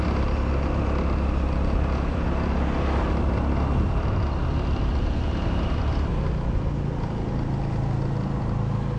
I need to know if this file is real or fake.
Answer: real